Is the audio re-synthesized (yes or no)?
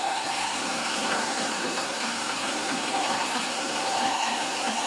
yes